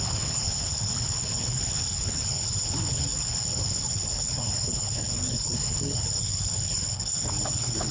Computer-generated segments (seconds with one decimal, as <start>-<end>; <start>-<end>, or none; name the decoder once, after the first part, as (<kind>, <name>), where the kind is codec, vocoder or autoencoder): 0.0-7.9 (codec, HILCodec)